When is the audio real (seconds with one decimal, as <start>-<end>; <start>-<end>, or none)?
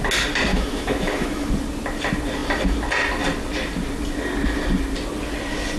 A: 0.0-0.5; 1.5-5.8